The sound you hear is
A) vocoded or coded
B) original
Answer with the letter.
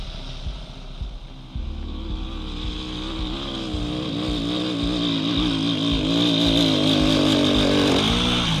B